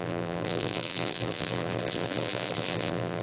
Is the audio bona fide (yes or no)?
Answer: no